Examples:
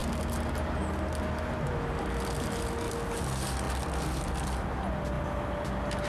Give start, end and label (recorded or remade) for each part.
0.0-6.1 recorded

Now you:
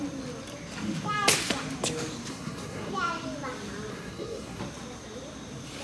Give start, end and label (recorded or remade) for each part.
0.0-2.3 recorded; 2.3-2.9 remade; 2.9-3.9 recorded; 3.9-4.6 remade; 4.6-5.8 recorded